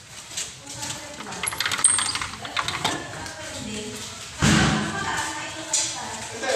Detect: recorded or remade recorded